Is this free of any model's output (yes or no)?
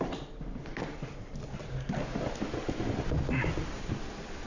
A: yes